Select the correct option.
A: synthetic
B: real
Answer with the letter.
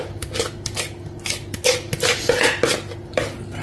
B